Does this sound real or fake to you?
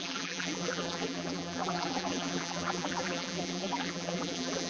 fake